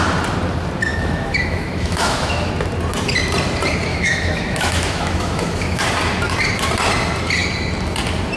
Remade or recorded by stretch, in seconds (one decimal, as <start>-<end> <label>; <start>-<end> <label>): 0.0-0.9 recorded; 0.9-2.5 remade; 2.5-3.9 recorded; 3.9-5.8 remade; 5.8-8.4 recorded

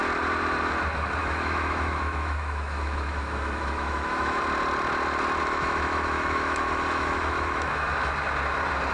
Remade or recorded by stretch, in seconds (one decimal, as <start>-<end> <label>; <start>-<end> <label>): 0.0-1.2 recorded; 1.2-4.4 remade; 4.4-5.4 recorded; 5.4-8.1 remade; 8.1-8.9 recorded